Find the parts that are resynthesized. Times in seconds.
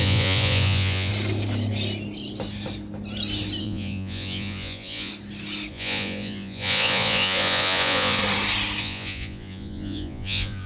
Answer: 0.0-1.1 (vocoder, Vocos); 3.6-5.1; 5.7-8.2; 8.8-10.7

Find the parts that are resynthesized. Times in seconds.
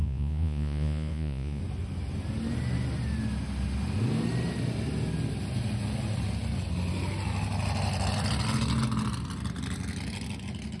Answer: 0.0-1.6 (vocoder, Vocos)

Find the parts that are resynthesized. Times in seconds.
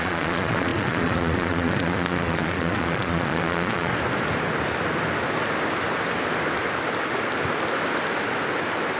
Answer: 0.0-3.9 (vocoder, Vocos)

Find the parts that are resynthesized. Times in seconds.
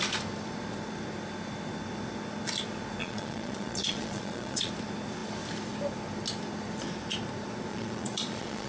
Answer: 3.0-4.7 (vocoder, Vocos); 7.7-8.7